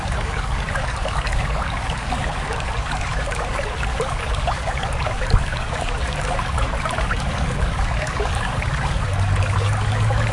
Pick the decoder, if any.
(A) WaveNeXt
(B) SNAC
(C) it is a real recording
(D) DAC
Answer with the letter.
D